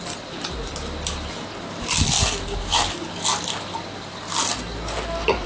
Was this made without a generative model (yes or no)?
yes